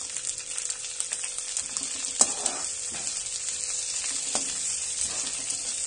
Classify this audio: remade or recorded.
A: recorded